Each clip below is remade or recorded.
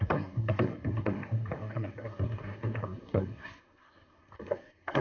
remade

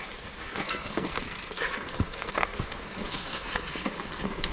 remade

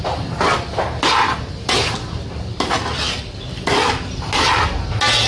recorded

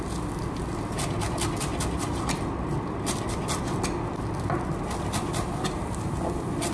recorded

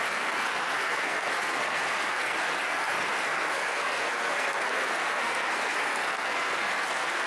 remade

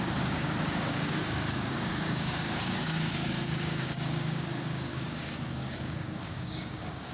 remade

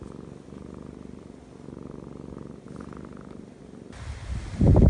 recorded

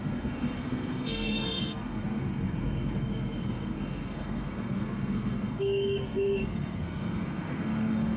remade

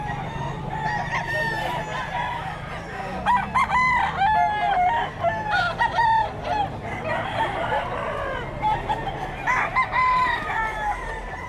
recorded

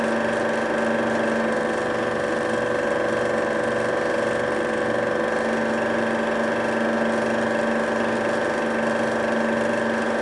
recorded